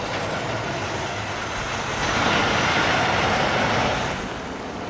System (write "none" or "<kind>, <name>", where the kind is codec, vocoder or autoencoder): none